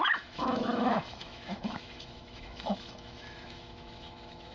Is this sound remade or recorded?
remade